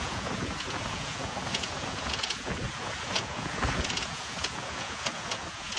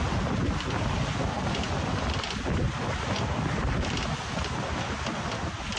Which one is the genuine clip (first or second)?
second